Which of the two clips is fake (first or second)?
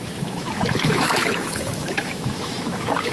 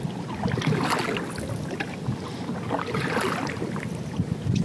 first